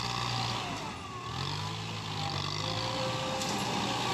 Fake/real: real